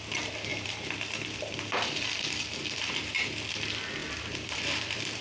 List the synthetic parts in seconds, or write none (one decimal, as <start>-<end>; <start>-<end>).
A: 0.5-3.5; 4.0-5.2